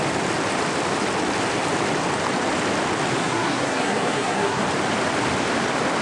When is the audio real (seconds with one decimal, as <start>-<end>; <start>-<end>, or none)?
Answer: 0.0-3.2; 4.6-6.0